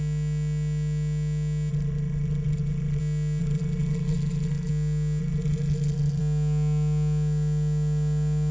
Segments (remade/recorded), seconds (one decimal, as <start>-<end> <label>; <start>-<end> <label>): 0.0-1.7 recorded; 1.7-3.0 remade; 3.0-3.4 recorded; 3.4-4.7 remade; 4.7-5.2 recorded; 5.2-6.2 remade; 6.2-8.5 recorded